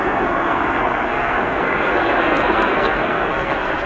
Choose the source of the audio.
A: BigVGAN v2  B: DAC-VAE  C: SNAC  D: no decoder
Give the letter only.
C